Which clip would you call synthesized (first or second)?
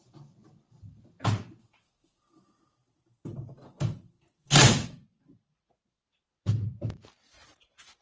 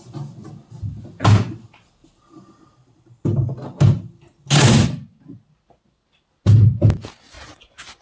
first